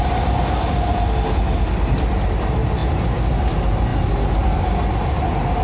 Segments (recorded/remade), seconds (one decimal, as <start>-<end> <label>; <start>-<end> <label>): 0.0-5.6 recorded